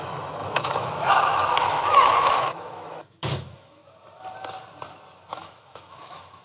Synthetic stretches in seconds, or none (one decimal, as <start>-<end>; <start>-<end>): 0.0-3.8; 5.3-6.4